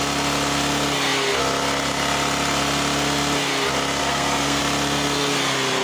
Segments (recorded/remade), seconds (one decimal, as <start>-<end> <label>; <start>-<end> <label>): 0.0-4.0 recorded; 4.0-4.6 remade; 4.6-5.8 recorded